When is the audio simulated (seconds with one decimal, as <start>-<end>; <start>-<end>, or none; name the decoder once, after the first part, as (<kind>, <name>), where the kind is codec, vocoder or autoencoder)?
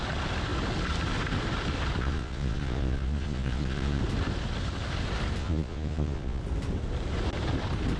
2.0-4.0 (vocoder, Vocos); 5.4-6.4